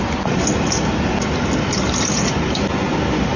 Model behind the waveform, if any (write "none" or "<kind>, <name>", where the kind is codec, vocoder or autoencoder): none